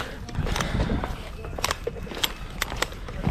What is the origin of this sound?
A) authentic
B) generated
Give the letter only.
A